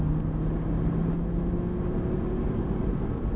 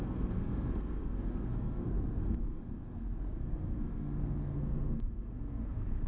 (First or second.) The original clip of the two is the first